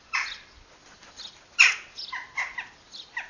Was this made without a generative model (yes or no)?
yes